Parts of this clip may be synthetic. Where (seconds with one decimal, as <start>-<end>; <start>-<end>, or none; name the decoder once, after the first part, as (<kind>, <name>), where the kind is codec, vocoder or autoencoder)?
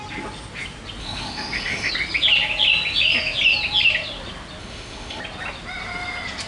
1.0-1.9 (autoencoder, DAC-VAE); 4.6-5.2